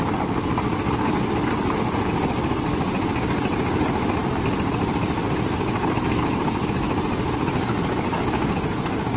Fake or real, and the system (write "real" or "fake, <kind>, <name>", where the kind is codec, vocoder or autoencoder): real